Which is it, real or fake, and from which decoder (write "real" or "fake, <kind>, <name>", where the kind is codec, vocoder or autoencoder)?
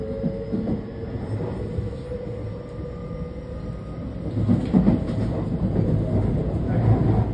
real